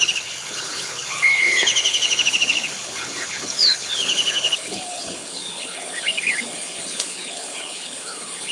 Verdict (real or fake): fake